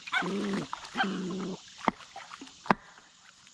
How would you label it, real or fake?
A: real